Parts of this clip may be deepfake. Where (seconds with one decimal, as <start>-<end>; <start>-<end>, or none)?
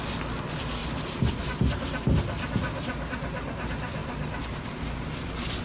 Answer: 0.8-1.3; 4.0-4.8